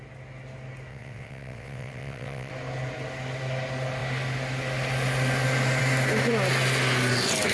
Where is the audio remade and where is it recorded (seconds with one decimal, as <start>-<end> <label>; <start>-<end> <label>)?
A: 0.0-0.9 recorded; 0.9-2.5 remade; 2.5-7.5 recorded